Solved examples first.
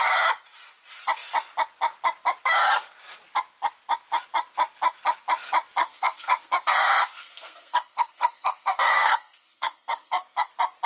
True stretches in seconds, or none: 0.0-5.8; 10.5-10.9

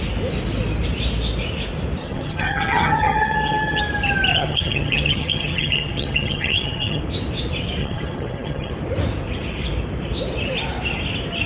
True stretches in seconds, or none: 0.0-2.0; 3.8-4.3; 7.0-7.8; 8.7-11.5

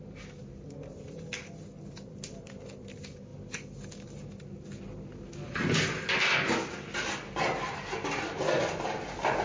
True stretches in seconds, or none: 0.0-9.4

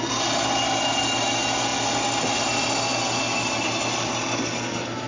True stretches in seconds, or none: 0.0-5.1

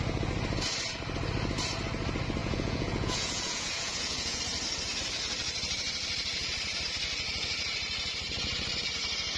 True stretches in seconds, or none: 0.0-2.4; 4.4-9.4